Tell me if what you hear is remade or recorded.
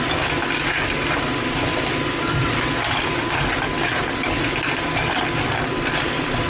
recorded